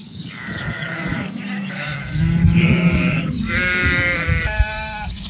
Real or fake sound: fake